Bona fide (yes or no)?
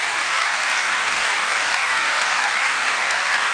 no